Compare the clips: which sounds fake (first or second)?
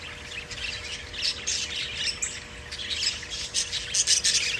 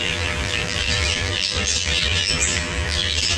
second